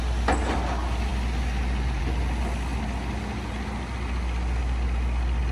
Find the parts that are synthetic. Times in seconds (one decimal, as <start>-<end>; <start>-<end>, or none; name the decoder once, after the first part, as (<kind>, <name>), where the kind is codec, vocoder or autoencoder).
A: none